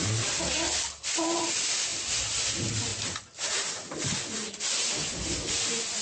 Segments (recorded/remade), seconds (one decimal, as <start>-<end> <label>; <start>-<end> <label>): 0.0-6.0 recorded